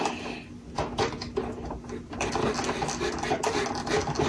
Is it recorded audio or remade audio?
recorded